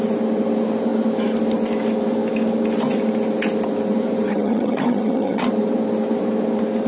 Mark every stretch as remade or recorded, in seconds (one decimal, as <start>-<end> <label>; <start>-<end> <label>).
0.0-4.3 recorded; 4.3-5.4 remade; 5.4-6.9 recorded